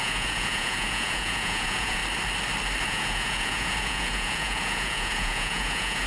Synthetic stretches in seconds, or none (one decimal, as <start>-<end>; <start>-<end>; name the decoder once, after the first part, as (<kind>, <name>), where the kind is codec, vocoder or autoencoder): 0.0-2.0 (vocoder, Vocos); 2.8-6.1

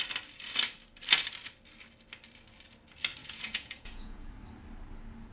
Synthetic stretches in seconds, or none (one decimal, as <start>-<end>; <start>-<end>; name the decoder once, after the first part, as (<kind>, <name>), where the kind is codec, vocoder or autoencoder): 3.2-4.3 (vocoder, Vocos)

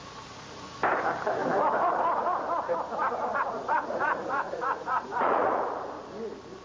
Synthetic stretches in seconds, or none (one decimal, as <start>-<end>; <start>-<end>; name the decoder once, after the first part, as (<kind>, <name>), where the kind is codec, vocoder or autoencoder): 0.0-0.8 (vocoder, Vocos); 3.3-5.6

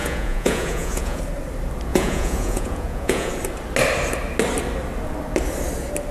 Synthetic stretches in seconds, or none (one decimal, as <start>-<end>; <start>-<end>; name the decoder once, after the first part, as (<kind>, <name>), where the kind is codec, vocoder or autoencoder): 0.0-1.2 (vocoder, Vocos); 1.9-3.3